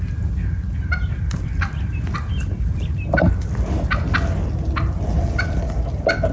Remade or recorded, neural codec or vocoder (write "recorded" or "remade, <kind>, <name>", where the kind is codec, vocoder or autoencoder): recorded